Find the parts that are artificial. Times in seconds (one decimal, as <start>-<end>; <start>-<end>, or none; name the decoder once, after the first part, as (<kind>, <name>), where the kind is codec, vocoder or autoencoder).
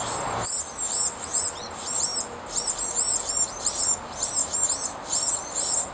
2.1-3.6 (vocoder, BigVGAN v2); 4.4-5.9